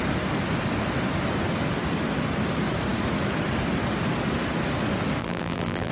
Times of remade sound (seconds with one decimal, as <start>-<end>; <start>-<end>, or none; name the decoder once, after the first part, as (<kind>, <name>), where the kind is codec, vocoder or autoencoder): 5.2-5.9 (vocoder, BigVGAN v2)